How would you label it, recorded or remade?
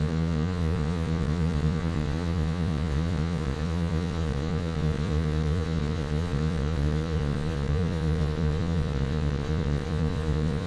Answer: remade